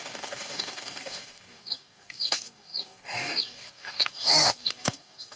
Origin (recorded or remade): remade